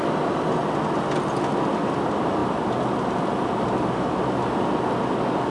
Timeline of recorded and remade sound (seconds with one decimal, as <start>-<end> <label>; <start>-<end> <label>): 0.0-5.5 recorded